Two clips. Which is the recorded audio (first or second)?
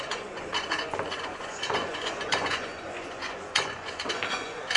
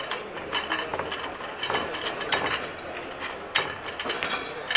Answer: second